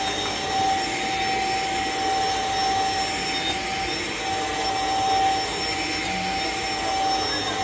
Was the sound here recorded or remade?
recorded